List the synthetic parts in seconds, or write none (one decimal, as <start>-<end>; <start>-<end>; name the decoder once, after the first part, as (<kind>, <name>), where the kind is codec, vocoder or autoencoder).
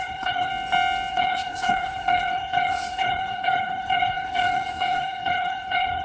0.0-0.5 (codec, HILCodec); 1.1-6.0